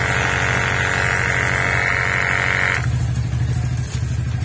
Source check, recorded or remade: recorded